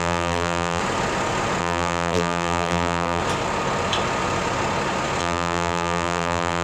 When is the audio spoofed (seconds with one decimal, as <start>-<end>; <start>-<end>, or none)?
0.0-0.8; 1.6-3.2; 5.2-6.6